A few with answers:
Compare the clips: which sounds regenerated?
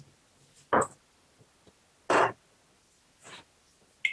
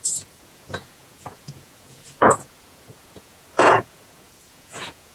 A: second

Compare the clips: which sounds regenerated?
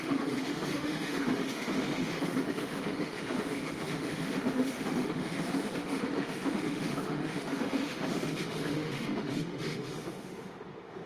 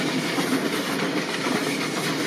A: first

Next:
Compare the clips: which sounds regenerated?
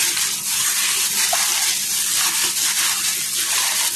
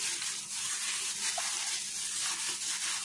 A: first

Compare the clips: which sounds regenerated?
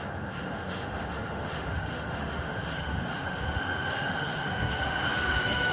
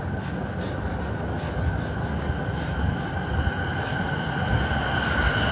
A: first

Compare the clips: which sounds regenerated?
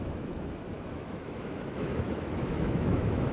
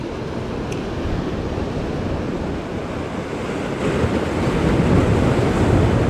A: first